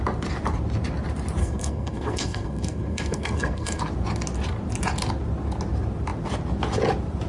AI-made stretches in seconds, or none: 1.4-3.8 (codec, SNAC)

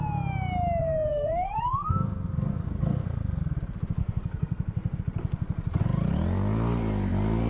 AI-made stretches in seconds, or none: 0.8-3.4 (codec, SNAC); 4.0-5.0

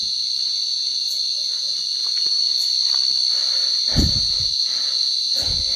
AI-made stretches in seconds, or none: 2.0-3.3 (vocoder, BigVGAN v2)

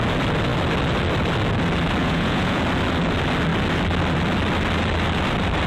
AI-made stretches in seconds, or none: 2.0-2.6 (vocoder, Vocos)